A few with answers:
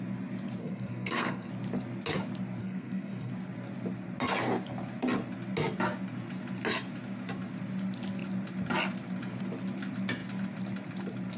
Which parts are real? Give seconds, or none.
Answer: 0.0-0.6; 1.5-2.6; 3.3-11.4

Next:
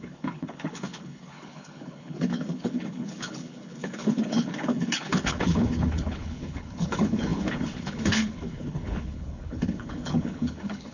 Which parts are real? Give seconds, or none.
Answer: none

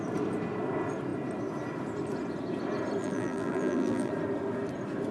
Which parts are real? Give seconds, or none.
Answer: 0.0-3.0; 4.1-5.1

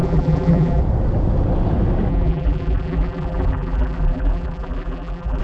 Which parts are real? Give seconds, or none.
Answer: 0.8-2.1